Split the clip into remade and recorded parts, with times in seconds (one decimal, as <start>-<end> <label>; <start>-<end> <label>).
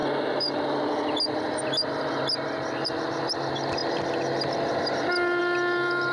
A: 0.0-6.1 recorded